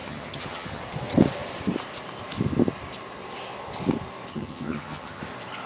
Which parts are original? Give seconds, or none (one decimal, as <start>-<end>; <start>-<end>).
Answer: 0.8-4.3; 5.2-5.7